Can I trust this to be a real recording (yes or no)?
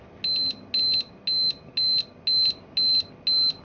yes